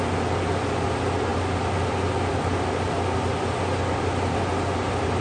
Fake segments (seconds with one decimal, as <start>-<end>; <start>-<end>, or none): none